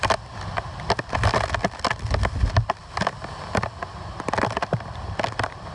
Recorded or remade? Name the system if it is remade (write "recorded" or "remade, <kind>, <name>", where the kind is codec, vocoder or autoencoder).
recorded